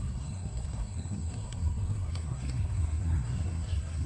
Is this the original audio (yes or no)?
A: no